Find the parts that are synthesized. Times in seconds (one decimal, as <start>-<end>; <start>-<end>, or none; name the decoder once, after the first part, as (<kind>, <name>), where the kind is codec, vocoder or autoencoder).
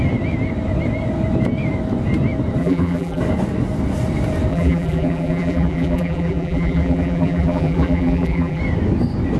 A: 2.6-3.2 (vocoder, BigVGAN v2); 4.5-8.6